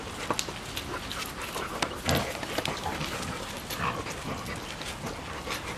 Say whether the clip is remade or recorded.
recorded